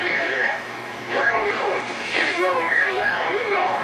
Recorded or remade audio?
remade